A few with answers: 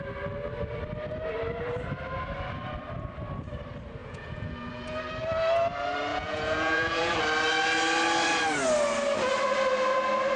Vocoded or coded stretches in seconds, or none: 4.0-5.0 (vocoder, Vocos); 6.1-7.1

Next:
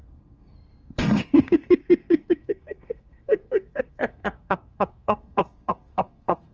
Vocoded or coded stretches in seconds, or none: 0.0-6.5 (codec, SNAC)

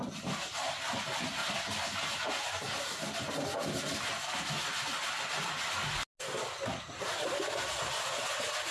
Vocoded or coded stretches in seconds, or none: none

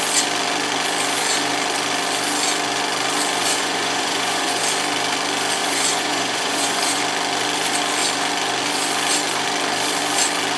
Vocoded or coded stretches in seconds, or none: 3.4-4.6 (vocoder, Vocos); 5.6-7.0